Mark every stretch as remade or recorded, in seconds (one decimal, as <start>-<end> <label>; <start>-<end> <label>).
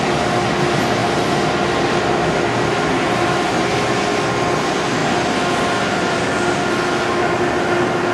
0.0-8.1 recorded